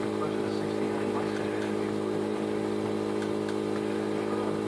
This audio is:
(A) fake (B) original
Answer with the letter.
B